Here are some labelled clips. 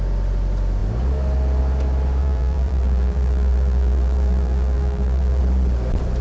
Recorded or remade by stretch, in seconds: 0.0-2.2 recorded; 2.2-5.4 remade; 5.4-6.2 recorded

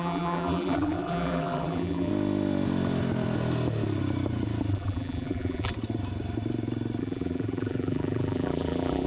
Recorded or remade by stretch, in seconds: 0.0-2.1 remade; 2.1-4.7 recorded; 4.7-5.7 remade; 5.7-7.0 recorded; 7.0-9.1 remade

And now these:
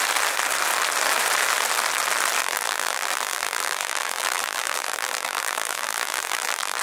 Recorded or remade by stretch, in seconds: 0.0-2.4 recorded; 2.4-6.8 remade

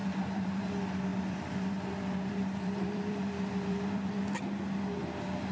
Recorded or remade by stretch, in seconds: 0.0-0.7 remade; 0.7-1.1 recorded; 1.1-4.4 remade; 4.4-5.5 recorded

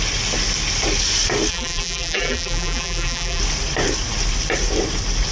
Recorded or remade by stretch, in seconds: 0.0-1.5 recorded; 1.5-3.4 remade; 3.4-5.3 recorded

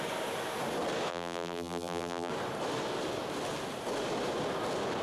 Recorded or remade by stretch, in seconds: 0.0-1.1 recorded; 1.1-2.3 remade; 2.3-5.0 recorded

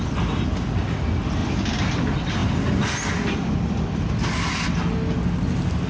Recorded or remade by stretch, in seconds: 0.0-1.4 recorded; 1.4-2.0 remade; 2.0-5.9 recorded